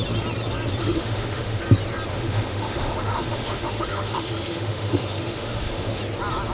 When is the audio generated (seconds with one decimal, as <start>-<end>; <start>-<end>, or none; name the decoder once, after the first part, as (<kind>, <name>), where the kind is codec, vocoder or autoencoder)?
0.8-1.6 (autoencoder, DAC-VAE); 2.1-6.0